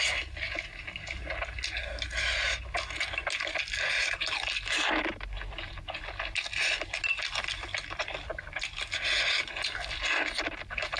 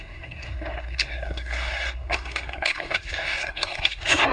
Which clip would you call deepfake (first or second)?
second